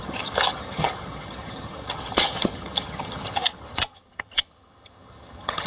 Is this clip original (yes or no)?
no